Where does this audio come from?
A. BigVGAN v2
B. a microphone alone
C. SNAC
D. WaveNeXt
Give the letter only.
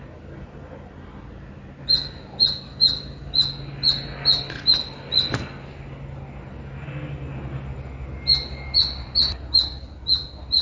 B